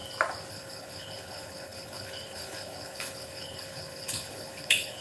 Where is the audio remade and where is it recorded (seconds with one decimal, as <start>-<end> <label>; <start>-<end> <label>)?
0.0-0.5 recorded; 0.5-5.0 remade